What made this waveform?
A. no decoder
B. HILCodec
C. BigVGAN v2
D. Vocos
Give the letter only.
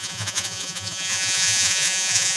D